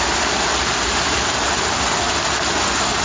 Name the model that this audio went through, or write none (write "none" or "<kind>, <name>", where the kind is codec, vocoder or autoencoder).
none